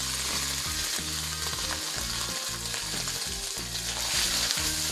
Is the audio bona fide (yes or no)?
yes